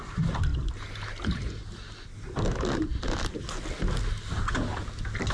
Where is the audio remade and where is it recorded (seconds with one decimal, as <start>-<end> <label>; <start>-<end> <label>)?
0.0-5.3 recorded